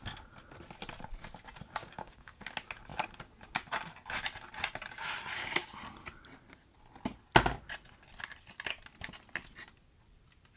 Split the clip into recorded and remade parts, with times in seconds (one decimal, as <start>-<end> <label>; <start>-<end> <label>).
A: 0.0-1.8 recorded; 1.8-2.4 remade; 2.4-10.6 recorded